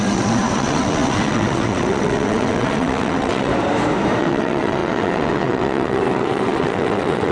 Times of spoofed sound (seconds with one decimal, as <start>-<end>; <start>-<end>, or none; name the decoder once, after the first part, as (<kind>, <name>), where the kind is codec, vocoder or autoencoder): 0.0-3.5 (vocoder, WaveNeXt); 4.2-7.3